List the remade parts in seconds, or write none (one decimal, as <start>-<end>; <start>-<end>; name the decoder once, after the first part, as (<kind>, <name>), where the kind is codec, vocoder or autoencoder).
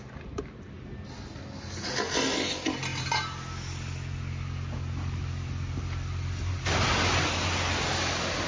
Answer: none